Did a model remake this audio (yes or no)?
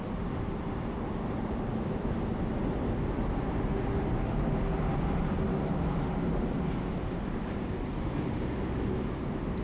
no